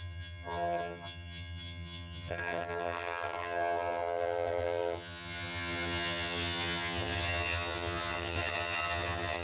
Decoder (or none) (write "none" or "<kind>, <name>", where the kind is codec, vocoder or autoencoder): vocoder, HiFi-GAN